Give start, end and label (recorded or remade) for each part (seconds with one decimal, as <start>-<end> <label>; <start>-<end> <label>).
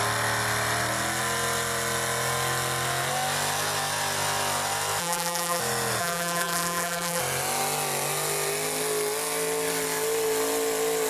0.0-5.0 recorded; 5.0-5.6 remade; 5.6-6.0 recorded; 6.0-7.2 remade; 7.2-11.1 recorded